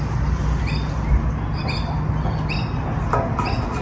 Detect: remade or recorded recorded